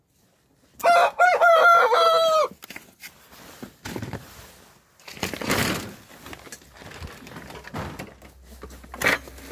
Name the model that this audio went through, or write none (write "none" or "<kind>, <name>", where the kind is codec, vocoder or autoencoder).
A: none